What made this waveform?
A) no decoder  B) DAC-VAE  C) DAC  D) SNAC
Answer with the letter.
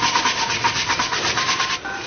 A